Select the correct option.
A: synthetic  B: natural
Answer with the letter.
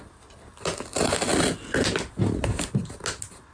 B